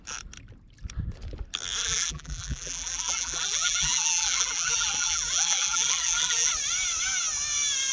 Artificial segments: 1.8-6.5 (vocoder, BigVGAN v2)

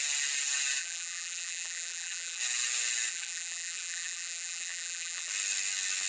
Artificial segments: 0.8-2.4 (vocoder, BigVGAN v2); 3.1-5.3

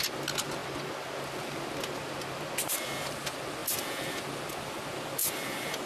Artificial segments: 5.2-5.9 (vocoder, BigVGAN v2)